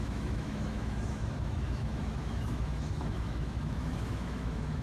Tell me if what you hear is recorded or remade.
remade